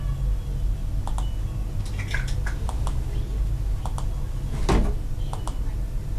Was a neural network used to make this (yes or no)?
no